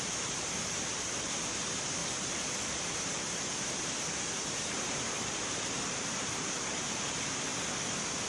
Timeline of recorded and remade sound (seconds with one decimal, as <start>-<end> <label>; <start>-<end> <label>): 0.0-2.0 remade; 2.0-3.0 recorded; 3.0-7.5 remade; 7.5-8.3 recorded